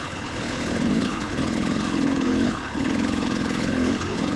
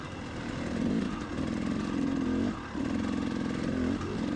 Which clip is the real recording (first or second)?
second